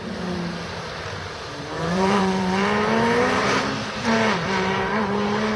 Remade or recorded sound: remade